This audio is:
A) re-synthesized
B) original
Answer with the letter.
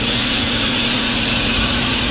A